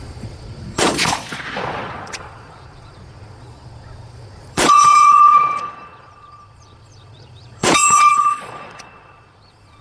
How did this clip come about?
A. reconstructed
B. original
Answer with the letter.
A